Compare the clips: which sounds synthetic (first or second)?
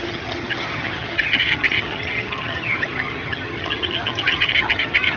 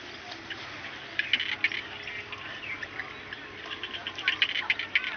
first